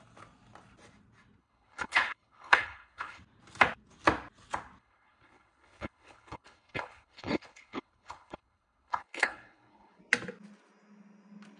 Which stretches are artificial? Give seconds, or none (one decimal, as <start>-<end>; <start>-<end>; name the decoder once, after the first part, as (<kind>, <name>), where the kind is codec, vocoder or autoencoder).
1.4-3.2 (codec, HILCodec); 4.8-10.0